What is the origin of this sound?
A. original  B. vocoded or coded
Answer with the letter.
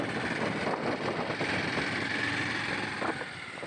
A